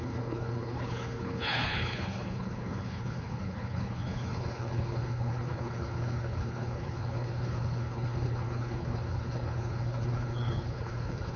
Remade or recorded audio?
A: remade